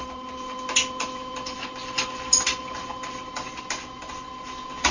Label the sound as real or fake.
real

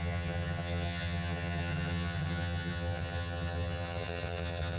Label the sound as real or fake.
fake